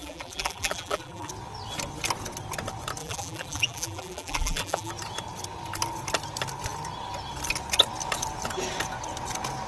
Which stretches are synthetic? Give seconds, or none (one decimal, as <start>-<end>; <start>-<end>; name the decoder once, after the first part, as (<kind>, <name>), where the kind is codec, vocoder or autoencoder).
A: 0.0-1.3 (vocoder, BigVGAN v2); 3.0-4.9